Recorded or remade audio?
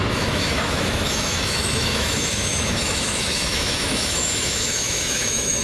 remade